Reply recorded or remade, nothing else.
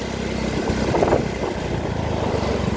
recorded